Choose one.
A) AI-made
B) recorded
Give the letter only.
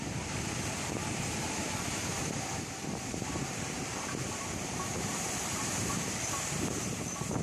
A